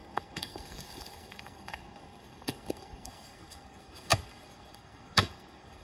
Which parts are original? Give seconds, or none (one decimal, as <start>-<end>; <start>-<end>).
none